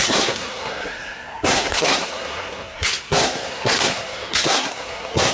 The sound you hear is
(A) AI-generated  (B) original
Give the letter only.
A